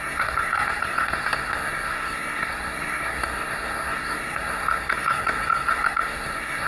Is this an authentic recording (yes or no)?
no